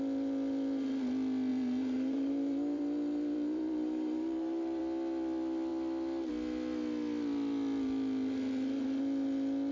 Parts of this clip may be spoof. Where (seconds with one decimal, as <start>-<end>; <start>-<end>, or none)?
1.5-4.8